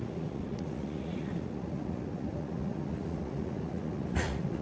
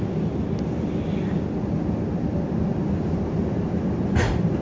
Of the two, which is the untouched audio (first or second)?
second